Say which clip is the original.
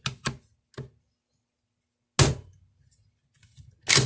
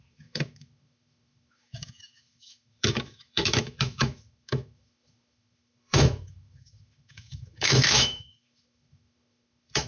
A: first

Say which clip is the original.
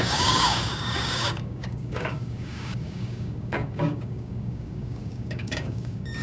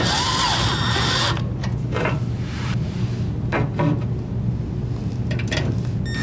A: second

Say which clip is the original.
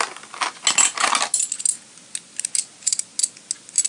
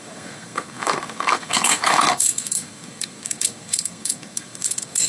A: first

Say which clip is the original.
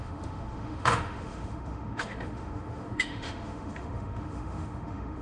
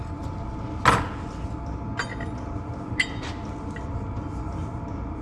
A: second